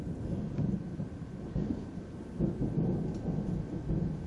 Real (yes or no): yes